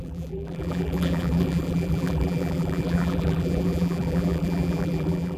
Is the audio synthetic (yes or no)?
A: yes